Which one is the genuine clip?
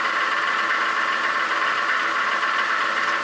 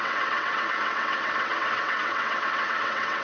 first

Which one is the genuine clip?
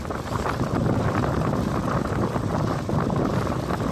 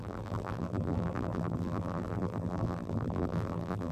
first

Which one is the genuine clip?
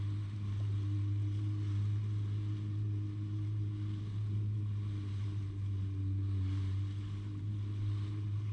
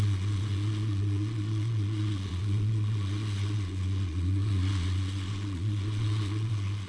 first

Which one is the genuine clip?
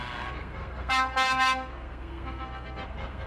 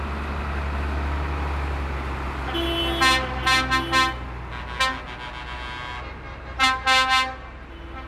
second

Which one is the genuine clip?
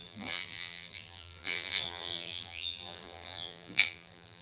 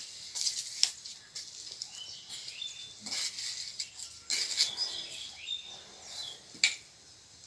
second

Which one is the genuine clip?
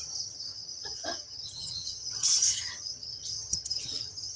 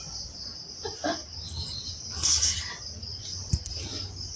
second